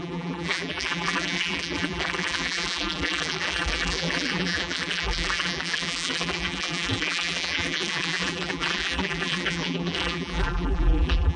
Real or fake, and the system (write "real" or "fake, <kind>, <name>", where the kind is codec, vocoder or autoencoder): fake, vocoder, BigVGAN v2